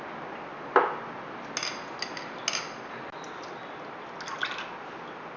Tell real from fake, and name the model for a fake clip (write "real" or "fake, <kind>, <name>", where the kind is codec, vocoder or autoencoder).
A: real